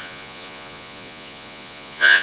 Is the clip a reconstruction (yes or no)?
yes